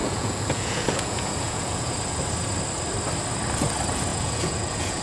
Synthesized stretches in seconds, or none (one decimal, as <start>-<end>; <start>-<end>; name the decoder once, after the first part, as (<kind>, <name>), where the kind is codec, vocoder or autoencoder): 0.0-2.2 (vocoder, Vocos); 4.1-5.0